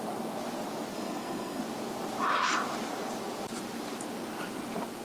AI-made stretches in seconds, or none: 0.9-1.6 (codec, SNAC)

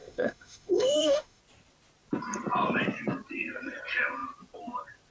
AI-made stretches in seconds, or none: 0.0-1.4 (autoencoder, DAC-VAE)

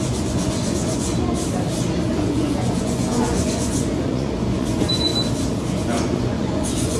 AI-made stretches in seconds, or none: 0.0-1.1 (vocoder, Vocos); 2.1-5.1; 5.6-7.0

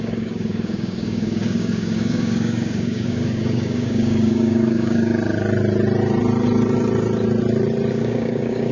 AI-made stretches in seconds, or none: 0.0-5.1 (codec, DAC); 7.9-8.7

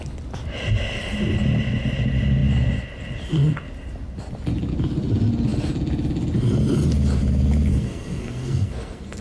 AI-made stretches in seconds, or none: 7.7-9.2 (codec, SNAC)

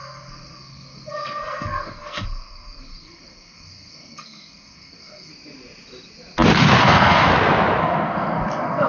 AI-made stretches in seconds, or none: 0.0-5.3 (codec, SNAC); 6.8-7.3; 7.8-8.9